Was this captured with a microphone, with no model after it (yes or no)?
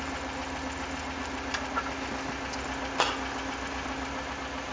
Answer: yes